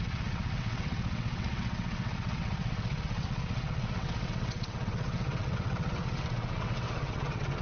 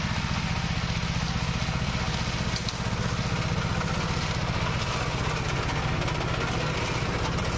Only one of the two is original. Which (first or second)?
second